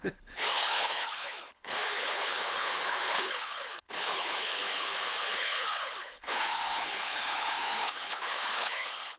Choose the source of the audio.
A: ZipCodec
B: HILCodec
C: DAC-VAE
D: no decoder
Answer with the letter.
B